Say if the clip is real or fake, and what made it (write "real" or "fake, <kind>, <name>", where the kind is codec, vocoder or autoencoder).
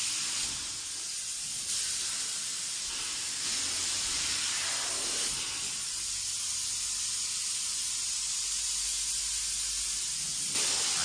real